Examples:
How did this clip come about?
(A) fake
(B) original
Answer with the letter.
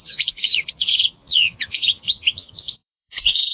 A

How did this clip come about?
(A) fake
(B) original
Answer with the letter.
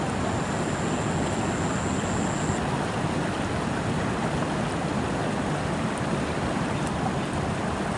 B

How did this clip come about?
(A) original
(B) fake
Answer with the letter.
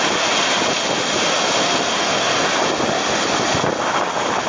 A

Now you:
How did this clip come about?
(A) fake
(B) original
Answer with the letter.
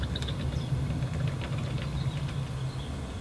B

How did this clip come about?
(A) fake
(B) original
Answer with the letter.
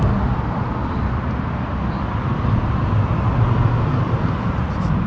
B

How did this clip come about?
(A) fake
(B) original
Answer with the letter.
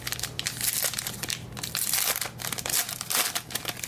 B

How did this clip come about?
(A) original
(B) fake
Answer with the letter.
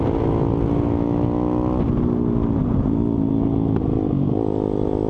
A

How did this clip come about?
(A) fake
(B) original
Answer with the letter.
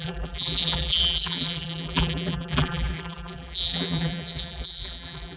A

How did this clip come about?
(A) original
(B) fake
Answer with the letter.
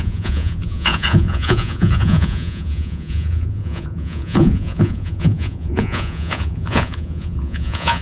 B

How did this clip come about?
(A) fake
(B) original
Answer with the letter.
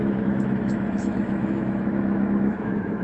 A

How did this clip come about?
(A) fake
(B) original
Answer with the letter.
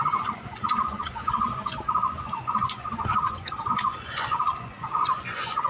A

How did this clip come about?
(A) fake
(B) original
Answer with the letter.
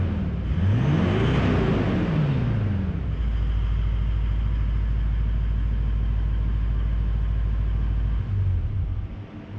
B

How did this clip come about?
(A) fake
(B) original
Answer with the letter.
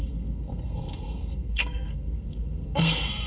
A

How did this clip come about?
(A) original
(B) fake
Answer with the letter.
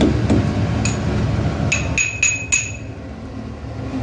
A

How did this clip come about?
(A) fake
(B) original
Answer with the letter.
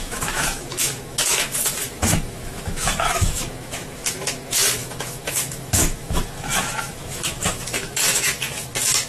A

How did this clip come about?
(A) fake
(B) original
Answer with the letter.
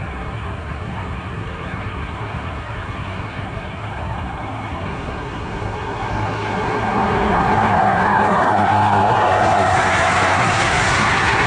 A